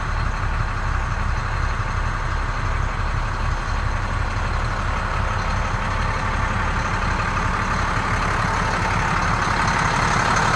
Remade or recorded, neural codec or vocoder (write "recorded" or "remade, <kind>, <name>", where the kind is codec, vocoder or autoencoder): recorded